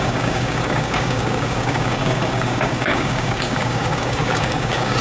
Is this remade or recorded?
remade